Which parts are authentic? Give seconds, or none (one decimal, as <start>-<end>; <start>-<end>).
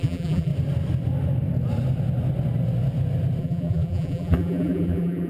0.5-3.4